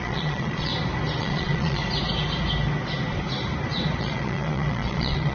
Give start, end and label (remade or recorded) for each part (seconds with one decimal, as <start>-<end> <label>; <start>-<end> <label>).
0.0-0.7 remade; 0.7-1.2 recorded; 1.2-1.8 remade; 1.8-4.0 recorded; 4.0-5.3 remade